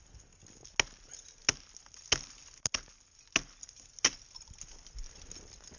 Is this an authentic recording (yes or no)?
yes